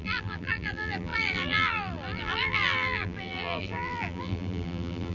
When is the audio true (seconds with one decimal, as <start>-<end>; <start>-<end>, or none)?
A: none

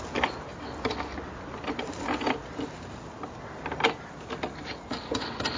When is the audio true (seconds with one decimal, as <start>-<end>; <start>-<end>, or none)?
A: 0.0-5.6

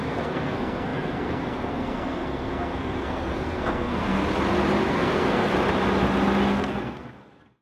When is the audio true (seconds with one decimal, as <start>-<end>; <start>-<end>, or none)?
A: 4.2-4.9; 5.5-6.5

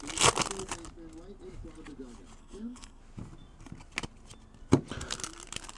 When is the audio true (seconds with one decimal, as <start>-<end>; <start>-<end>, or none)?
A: 0.0-2.4; 3.0-5.8

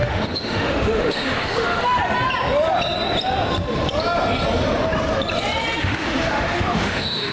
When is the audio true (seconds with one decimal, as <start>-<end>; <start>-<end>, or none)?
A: 2.0-5.8

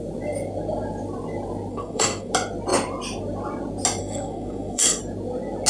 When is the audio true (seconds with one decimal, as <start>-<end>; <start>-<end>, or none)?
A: 0.0-1.7; 2.3-4.0; 5.0-5.7

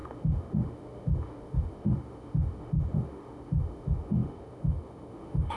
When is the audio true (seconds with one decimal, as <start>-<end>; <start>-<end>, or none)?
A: none

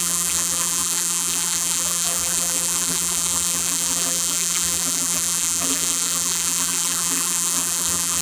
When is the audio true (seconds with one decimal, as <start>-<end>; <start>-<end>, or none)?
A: none